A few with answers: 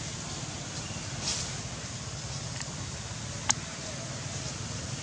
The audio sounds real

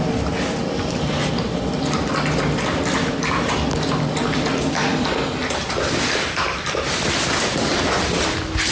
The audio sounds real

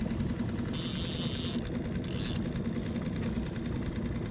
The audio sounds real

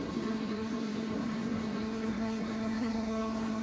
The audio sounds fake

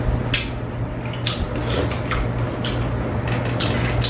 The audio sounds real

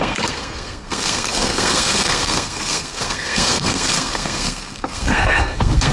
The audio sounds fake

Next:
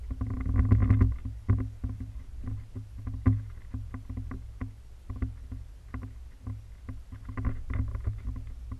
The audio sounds real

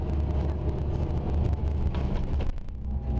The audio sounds real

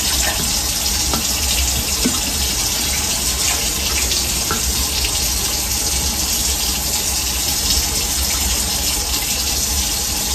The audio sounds real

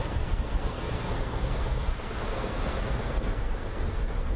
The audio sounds fake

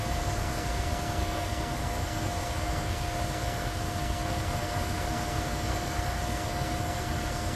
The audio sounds fake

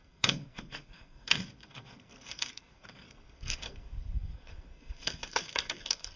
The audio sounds fake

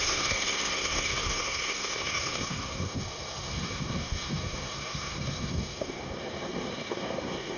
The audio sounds fake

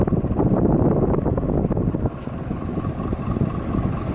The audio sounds real